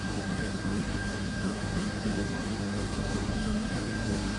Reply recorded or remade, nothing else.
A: remade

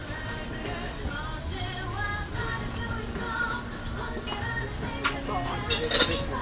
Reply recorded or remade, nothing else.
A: recorded